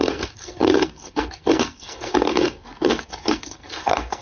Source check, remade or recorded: remade